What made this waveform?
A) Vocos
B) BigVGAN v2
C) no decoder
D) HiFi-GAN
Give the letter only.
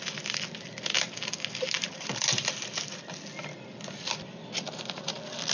C